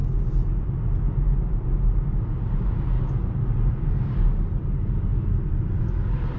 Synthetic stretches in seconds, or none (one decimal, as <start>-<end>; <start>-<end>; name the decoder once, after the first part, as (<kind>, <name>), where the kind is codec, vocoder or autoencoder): none